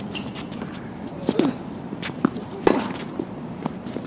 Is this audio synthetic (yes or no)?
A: no